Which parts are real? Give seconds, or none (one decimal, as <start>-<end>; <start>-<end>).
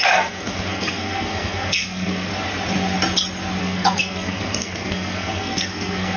2.3-3.6